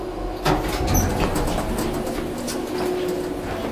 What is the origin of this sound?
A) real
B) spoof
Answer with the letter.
A